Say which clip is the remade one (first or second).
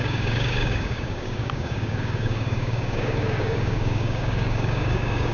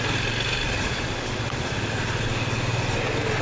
first